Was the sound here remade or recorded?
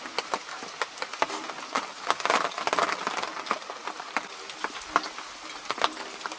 recorded